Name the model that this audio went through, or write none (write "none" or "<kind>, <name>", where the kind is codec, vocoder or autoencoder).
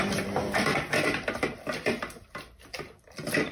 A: vocoder, BigVGAN v2